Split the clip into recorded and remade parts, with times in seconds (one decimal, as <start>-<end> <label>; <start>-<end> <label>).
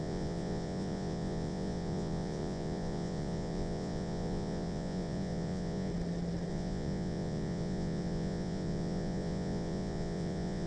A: 0.0-5.9 remade; 5.9-6.5 recorded; 6.5-10.7 remade